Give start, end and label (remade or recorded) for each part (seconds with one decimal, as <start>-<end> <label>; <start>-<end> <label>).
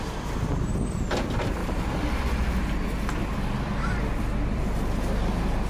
0.0-1.6 recorded; 1.6-2.2 remade; 2.2-3.2 recorded; 3.2-4.6 remade; 4.6-5.7 recorded